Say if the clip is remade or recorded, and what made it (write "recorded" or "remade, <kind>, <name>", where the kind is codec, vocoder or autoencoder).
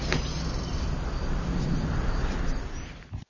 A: recorded